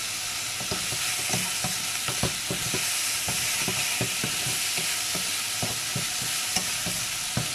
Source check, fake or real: real